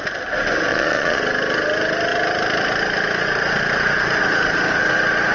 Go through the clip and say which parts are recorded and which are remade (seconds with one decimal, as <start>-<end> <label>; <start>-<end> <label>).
0.0-0.7 recorded; 0.7-1.2 remade; 1.2-5.3 recorded